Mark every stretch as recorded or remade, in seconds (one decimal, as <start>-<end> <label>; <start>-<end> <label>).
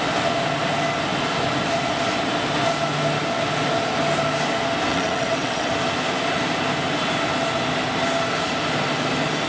0.0-4.9 recorded; 4.9-5.7 remade; 5.7-9.5 recorded